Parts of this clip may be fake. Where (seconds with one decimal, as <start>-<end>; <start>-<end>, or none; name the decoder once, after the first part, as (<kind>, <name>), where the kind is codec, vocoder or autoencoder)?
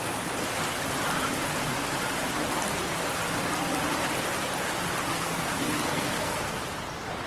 5.1-6.6 (codec, SNAC)